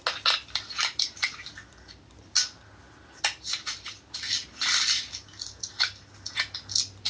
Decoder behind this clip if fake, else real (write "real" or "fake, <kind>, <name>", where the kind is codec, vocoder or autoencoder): real